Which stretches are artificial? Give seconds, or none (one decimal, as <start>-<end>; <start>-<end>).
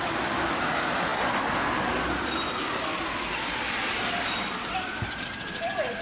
none